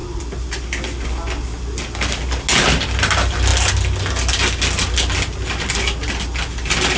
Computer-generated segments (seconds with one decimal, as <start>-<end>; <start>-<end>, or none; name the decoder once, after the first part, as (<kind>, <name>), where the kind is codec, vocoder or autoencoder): none